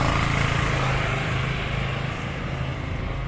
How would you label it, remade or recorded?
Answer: recorded